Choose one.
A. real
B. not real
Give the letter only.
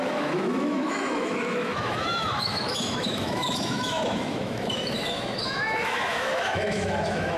B